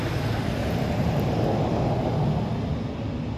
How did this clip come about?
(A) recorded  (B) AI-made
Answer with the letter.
A